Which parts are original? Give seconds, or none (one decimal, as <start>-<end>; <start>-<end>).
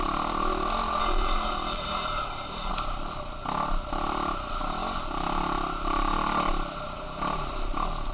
0.0-1.0; 2.7-8.1